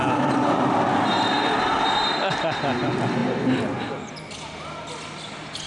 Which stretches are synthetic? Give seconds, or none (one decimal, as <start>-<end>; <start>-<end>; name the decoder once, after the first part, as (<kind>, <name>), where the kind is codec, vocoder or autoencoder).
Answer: none